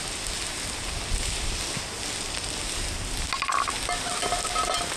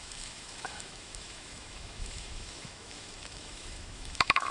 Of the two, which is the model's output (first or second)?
second